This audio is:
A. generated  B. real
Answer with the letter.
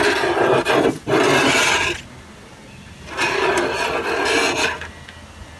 B